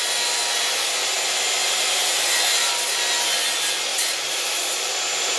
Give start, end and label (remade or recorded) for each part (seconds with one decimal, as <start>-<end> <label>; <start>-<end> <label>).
0.0-1.6 recorded; 1.6-2.7 remade; 2.7-3.9 recorded; 3.9-5.0 remade; 5.0-5.4 recorded